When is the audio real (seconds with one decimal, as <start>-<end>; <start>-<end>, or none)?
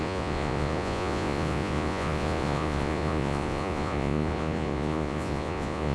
none